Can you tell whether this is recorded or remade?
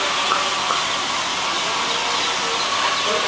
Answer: recorded